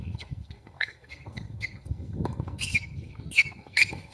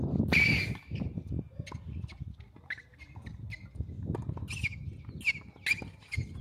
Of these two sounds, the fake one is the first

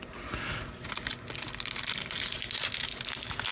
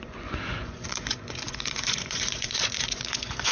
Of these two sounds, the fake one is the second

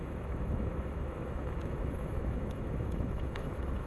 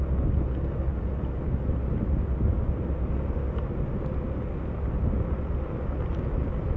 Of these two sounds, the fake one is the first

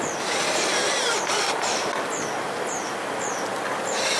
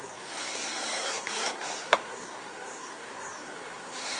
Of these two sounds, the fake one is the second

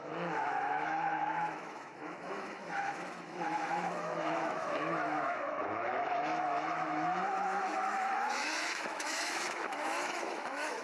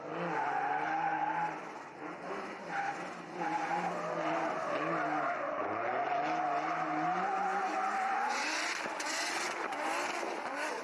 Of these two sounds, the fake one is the first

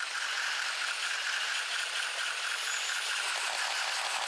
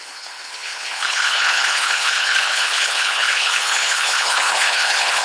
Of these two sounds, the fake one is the second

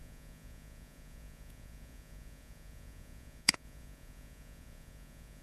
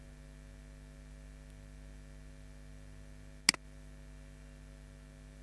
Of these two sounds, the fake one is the first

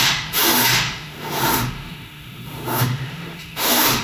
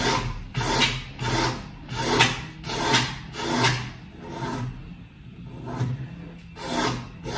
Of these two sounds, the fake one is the first